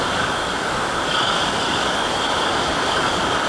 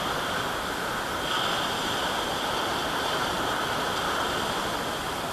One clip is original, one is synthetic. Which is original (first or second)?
second